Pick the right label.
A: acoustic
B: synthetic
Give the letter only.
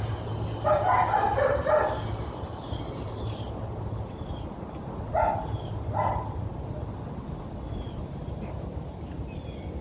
A